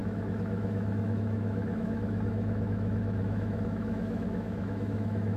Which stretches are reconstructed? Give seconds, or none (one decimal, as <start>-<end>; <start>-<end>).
0.0-5.4